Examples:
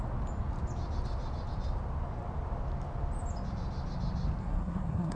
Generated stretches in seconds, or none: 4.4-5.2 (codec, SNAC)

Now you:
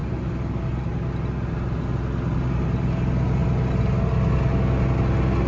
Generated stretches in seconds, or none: none

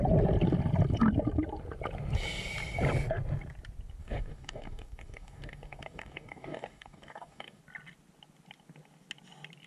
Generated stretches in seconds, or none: 4.0-7.6 (codec, DAC)

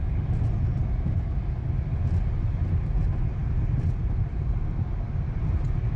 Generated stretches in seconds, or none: none

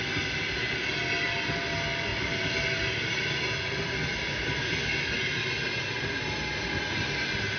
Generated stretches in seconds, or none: none